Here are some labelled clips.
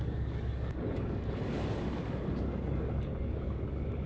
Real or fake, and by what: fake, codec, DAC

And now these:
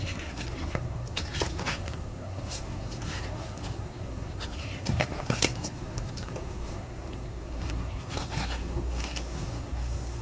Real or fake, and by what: fake, codec, SNAC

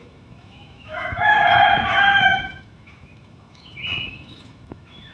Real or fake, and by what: fake, autoencoder, DAC-VAE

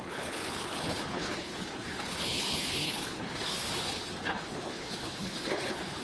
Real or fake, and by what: fake, codec, HILCodec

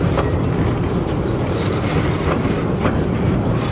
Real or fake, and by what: fake, vocoder, BigVGAN v2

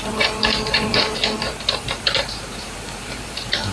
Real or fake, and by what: fake, vocoder, BigVGAN v2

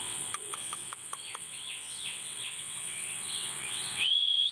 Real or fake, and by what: fake, vocoder, WaveNeXt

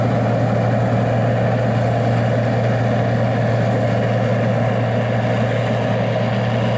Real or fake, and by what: real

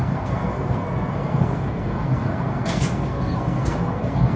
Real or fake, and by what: fake, codec, SNAC